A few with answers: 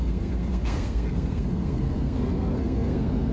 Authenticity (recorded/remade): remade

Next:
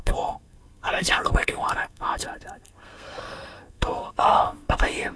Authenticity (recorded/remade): remade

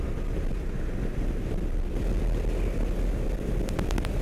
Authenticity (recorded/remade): recorded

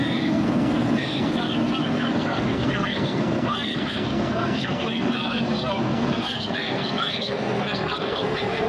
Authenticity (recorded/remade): remade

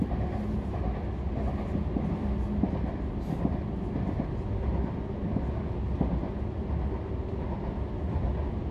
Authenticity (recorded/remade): recorded